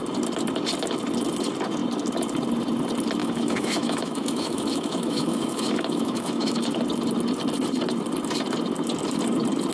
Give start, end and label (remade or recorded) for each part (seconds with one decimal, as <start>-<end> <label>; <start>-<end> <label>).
0.0-3.2 recorded; 3.2-6.7 remade; 6.7-9.7 recorded